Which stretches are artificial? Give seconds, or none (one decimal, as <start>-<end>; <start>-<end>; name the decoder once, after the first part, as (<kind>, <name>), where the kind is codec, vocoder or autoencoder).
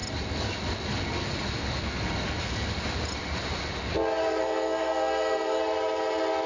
4.4-5.6 (codec, SNAC)